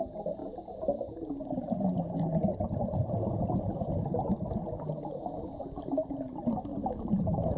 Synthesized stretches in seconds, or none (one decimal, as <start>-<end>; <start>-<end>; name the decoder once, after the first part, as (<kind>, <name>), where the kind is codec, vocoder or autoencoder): 4.6-5.9 (vocoder, BigVGAN v2); 6.7-7.6